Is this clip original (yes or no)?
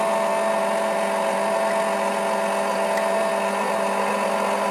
yes